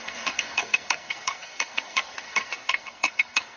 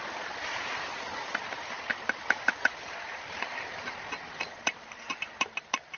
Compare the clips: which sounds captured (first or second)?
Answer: second